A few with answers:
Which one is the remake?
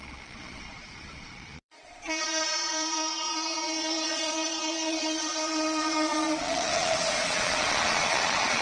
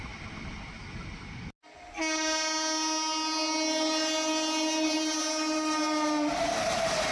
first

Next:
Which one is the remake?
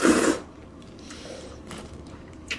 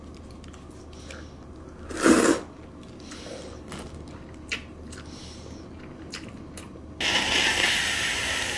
first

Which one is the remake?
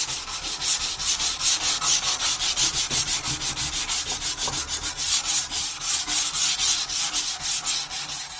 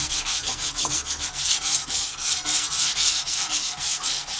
second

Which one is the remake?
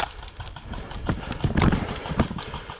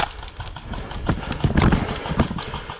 first